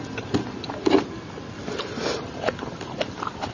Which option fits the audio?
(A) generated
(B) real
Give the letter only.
B